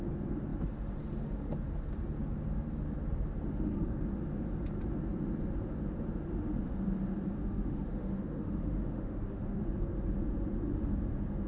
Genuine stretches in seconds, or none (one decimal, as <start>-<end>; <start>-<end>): 0.0-3.5; 4.0-7.4; 9.6-11.5